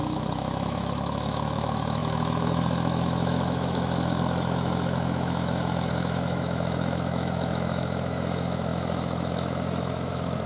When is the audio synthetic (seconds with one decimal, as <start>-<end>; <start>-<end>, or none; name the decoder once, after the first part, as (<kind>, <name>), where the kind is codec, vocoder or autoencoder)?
0.0-10.5 (autoencoder, DAC-VAE)